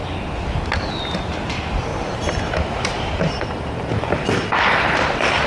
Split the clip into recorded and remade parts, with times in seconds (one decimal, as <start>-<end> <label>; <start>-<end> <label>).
0.0-1.9 recorded; 1.9-5.1 remade; 5.1-5.5 recorded